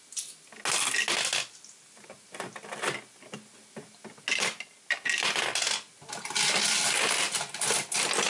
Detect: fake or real real